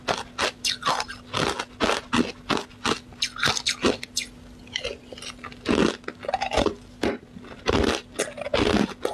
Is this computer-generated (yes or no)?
no